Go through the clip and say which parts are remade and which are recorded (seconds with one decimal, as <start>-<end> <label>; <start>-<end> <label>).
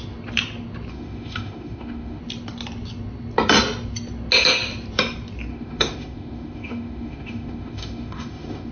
0.0-0.9 recorded; 0.9-2.2 remade; 2.2-5.5 recorded; 5.5-8.7 remade